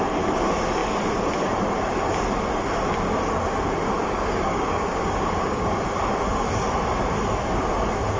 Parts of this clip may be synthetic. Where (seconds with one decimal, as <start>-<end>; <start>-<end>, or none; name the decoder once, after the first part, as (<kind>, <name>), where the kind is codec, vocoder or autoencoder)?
4.0-5.7 (codec, DAC)